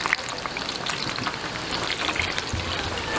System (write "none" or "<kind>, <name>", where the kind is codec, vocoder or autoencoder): none